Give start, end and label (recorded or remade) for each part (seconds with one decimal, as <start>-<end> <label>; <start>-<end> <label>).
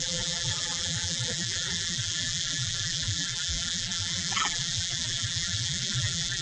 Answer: 0.0-6.4 remade